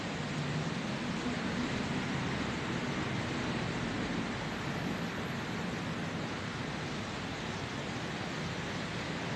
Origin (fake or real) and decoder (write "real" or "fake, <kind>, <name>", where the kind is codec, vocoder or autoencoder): real